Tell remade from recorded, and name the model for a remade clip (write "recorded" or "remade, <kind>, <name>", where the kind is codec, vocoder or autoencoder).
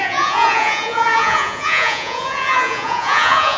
remade, vocoder, Vocos